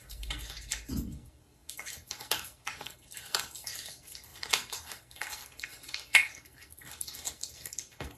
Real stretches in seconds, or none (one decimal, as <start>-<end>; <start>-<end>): none